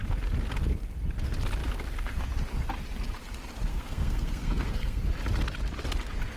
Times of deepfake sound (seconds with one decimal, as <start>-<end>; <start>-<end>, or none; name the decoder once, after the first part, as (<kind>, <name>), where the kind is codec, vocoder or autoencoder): 3.7-5.0 (codec, SNAC)